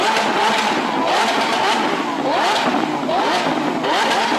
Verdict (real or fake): real